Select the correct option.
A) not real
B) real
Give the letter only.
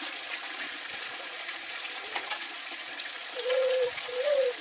A